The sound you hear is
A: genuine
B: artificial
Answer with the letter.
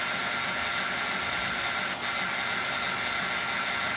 A